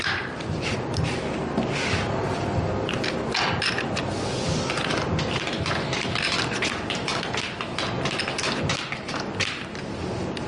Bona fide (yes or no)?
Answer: yes